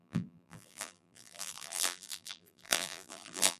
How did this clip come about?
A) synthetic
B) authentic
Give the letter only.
A